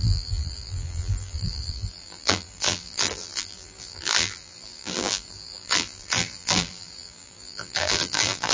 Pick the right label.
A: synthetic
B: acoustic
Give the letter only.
A